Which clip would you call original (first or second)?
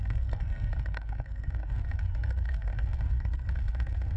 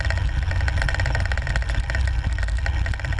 second